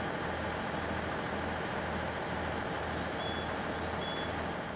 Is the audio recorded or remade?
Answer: recorded